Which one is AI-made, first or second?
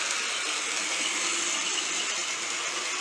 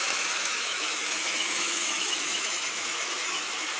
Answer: second